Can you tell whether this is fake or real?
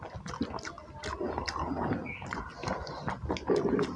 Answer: real